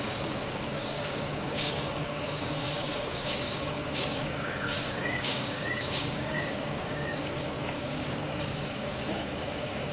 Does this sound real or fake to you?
fake